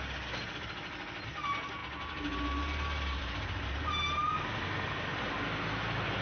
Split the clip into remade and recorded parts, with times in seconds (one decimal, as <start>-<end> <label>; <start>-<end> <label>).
0.0-6.2 recorded

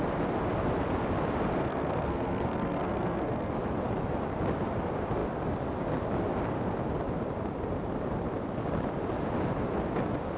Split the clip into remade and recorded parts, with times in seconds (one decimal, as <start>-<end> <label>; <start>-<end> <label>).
0.0-1.6 recorded; 1.6-3.5 remade; 3.5-10.4 recorded

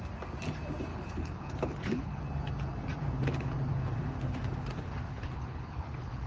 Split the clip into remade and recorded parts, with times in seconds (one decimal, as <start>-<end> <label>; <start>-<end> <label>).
0.0-0.9 recorded; 0.9-2.2 remade; 2.2-5.1 recorded; 5.1-6.3 remade

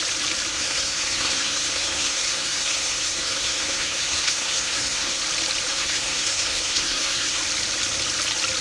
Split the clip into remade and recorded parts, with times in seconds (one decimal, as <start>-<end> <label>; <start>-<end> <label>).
0.0-0.5 recorded; 0.5-5.2 remade; 5.2-5.7 recorded; 5.7-7.4 remade; 7.4-8.6 recorded

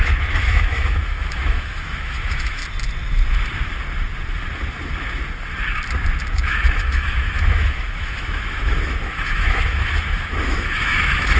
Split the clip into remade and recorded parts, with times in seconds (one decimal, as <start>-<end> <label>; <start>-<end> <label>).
0.0-2.6 remade; 2.6-6.3 recorded; 6.3-11.4 remade

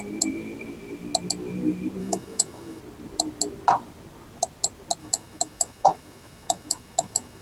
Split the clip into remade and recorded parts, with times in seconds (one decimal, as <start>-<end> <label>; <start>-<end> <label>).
0.0-2.0 recorded; 2.0-2.8 remade; 2.8-5.0 recorded; 5.0-7.4 remade